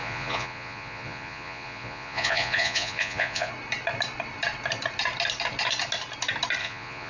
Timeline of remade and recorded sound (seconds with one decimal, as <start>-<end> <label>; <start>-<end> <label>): 0.0-3.5 remade; 3.5-6.6 recorded; 6.6-7.1 remade